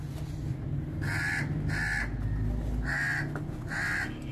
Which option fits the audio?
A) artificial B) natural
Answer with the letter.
B